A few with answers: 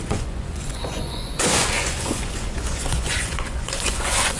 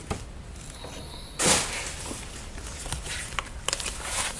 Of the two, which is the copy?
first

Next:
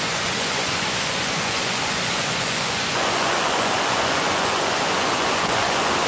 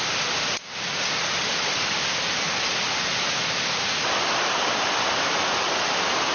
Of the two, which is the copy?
first